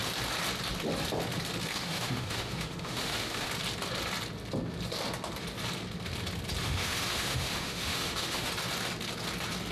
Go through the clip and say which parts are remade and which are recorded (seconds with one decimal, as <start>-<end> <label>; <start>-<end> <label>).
0.0-1.7 recorded; 1.7-3.5 remade; 3.5-6.6 recorded; 6.6-8.5 remade; 8.5-9.7 recorded

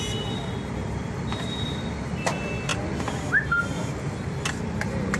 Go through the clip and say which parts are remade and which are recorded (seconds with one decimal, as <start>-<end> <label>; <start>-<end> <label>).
0.0-5.2 recorded

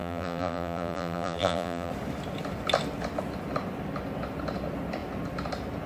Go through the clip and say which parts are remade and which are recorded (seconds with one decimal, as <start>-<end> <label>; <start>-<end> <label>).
0.0-1.9 remade; 1.9-5.9 recorded

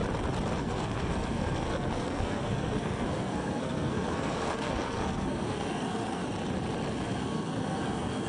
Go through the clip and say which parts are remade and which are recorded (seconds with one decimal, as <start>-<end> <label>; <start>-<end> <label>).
0.0-0.6 recorded; 0.6-6.2 remade; 6.2-6.9 recorded; 6.9-8.3 remade

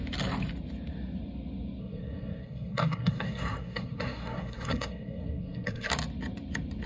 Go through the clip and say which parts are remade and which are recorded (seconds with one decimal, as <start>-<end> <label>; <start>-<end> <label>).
0.0-1.8 recorded; 1.8-5.9 remade; 5.9-6.9 recorded

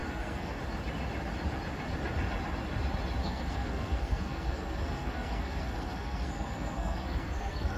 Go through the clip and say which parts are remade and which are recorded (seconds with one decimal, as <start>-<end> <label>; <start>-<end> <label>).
0.0-0.6 remade; 0.6-3.2 recorded; 3.2-7.8 remade

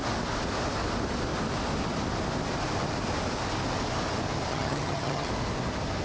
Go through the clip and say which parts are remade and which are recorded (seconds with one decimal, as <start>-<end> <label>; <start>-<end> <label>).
0.0-4.5 recorded; 4.5-5.3 remade; 5.3-6.0 recorded

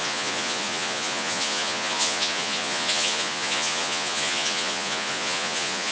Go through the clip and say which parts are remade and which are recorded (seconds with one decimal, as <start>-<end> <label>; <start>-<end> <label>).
0.0-5.9 remade